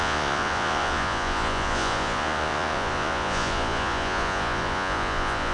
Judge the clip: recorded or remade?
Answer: remade